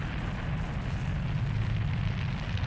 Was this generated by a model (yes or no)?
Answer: no